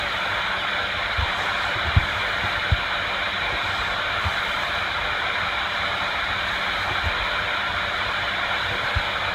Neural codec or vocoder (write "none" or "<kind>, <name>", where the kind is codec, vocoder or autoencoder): vocoder, BigVGAN v2